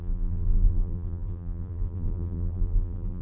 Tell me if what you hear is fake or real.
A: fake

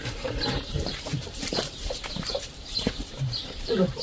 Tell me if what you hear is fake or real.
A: fake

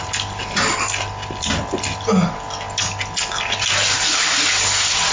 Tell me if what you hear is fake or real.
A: real